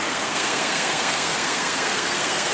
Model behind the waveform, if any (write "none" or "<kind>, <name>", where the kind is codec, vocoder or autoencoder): codec, SNAC